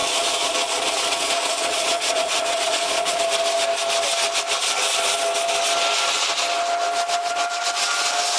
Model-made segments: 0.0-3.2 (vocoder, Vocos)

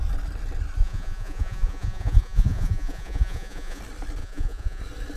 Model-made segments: 0.8-3.8 (vocoder, Vocos); 4.2-4.8

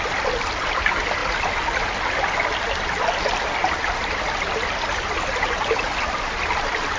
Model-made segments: none